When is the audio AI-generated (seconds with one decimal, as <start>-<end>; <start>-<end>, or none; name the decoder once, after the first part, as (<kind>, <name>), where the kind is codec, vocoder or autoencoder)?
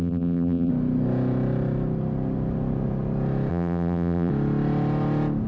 0.0-0.7 (vocoder, BigVGAN v2); 3.5-4.3